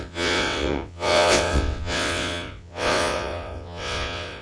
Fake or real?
fake